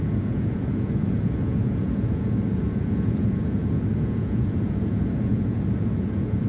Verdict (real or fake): fake